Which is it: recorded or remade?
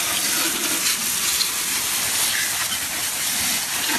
recorded